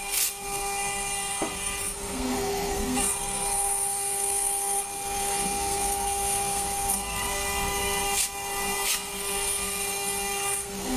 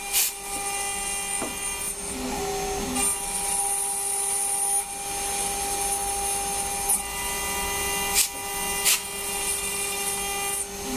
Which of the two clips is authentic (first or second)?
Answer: second